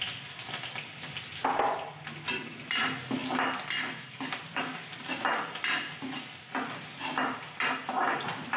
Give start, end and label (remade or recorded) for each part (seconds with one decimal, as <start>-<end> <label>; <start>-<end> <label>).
0.0-8.6 recorded